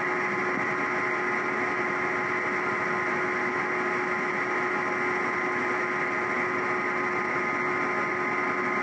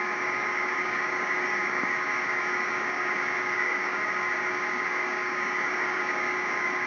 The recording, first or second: first